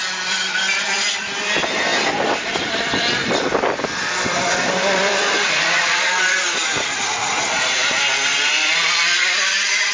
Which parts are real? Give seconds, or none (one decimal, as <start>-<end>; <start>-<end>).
none